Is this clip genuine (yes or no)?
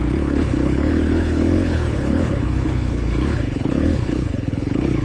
no